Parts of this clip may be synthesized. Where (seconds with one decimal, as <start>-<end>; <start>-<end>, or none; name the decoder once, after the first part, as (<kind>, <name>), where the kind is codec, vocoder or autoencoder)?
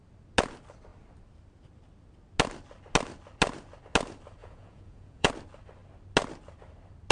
4.4-5.3 (vocoder, Vocos)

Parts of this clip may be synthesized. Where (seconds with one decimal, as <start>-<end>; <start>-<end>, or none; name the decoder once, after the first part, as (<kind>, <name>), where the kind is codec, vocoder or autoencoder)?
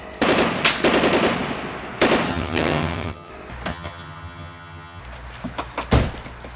2.3-3.3 (vocoder, HiFi-GAN); 3.7-5.0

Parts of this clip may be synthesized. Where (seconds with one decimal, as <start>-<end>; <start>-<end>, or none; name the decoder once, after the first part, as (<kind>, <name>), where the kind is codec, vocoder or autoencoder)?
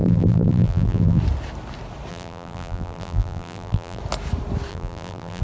0.0-1.2 (vocoder, BigVGAN v2); 2.1-4.0; 4.7-5.4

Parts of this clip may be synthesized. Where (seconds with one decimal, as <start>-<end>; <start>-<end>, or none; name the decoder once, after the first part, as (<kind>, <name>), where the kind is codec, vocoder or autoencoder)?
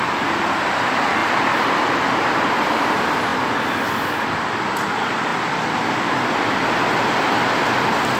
none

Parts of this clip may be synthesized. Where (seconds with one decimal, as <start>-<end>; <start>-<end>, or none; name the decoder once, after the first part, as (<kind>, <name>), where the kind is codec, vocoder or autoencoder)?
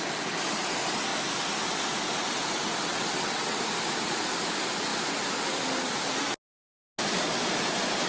2.9-3.6 (vocoder, WaveNeXt)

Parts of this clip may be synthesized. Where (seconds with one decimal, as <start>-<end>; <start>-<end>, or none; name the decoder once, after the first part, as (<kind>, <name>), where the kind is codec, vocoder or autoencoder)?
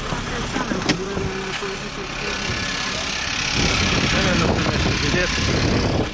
none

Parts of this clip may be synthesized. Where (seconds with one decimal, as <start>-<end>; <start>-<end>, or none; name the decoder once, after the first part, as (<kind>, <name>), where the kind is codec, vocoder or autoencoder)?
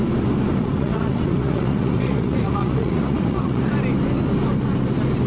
0.5-3.7 (vocoder, Vocos)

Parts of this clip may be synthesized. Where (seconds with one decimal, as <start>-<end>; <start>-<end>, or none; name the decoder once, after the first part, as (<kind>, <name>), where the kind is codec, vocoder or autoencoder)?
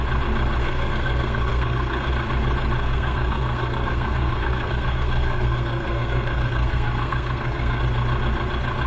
0.6-2.1 (codec, SNAC); 2.8-7.8